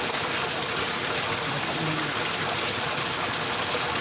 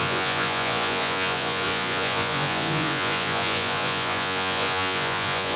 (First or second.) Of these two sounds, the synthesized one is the second